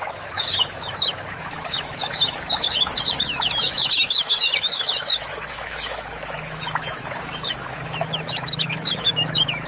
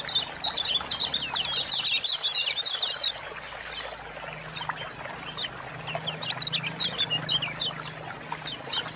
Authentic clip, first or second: second